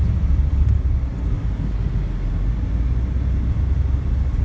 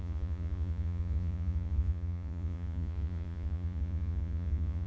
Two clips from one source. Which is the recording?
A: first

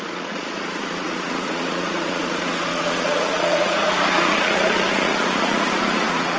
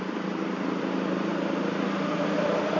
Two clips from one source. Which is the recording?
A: second